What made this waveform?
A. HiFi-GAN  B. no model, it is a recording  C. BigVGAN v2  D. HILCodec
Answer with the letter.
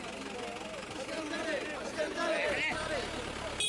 B